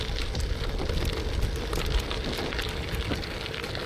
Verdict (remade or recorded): recorded